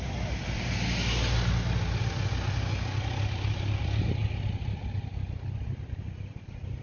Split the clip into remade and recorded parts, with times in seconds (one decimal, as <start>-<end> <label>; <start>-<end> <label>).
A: 0.0-6.8 recorded